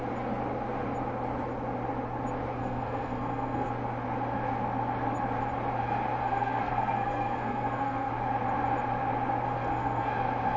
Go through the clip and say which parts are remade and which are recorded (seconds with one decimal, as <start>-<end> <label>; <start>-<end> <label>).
0.0-2.6 recorded; 2.6-3.7 remade; 3.7-6.2 recorded; 6.2-8.1 remade; 8.1-9.5 recorded; 9.5-10.1 remade; 10.1-10.6 recorded